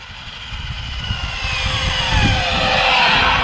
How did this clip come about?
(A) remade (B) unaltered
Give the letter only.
B